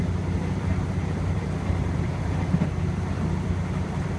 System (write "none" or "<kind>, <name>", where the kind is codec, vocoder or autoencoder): vocoder, BigVGAN v2